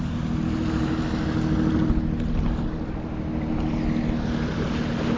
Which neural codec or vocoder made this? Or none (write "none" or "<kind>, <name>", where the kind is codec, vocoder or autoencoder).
none